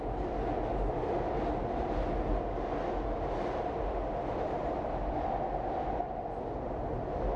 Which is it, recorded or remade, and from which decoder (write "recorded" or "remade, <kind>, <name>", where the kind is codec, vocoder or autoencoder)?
recorded